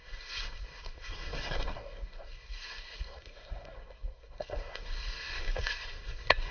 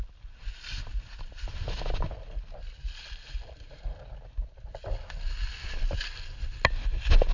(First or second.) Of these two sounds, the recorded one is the second